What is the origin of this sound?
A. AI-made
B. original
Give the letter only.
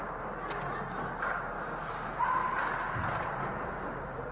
B